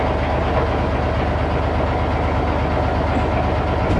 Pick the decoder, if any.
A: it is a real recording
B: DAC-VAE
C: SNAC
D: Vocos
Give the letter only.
A